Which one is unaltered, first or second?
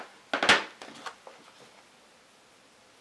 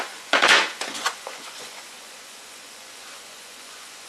first